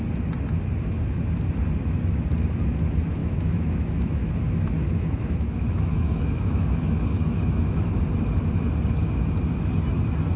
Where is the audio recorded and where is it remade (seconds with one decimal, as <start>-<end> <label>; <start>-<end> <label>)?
0.0-3.2 recorded; 3.2-4.3 remade; 4.3-4.8 recorded; 4.8-8.0 remade; 8.0-10.4 recorded